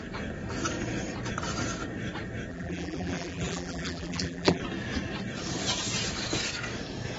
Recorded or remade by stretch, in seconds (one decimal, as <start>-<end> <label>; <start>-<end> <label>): 0.0-2.5 recorded; 2.5-4.6 remade; 4.6-7.2 recorded